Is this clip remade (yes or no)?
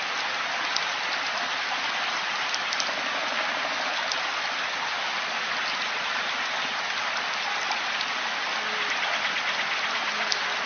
no